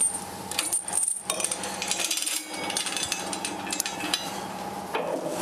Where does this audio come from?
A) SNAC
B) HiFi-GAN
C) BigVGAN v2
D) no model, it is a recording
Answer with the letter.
C